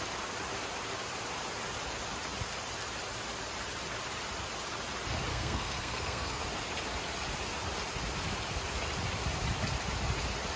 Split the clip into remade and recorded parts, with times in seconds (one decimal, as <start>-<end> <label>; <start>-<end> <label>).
0.0-5.3 recorded; 5.3-6.4 remade; 6.4-10.6 recorded